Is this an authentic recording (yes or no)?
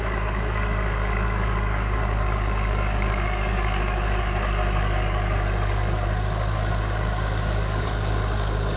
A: no